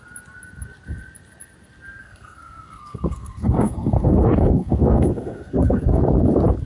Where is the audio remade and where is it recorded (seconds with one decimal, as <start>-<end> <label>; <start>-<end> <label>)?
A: 0.0-2.0 recorded; 2.0-6.0 remade; 6.0-6.7 recorded